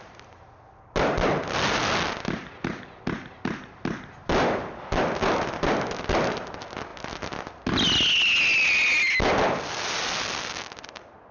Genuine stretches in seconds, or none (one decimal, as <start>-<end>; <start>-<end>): 0.0-11.3

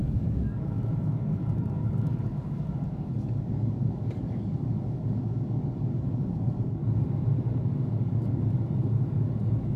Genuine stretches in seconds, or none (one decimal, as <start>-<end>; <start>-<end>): 6.8-7.6

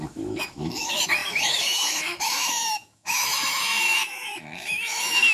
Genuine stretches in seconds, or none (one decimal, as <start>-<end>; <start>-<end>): none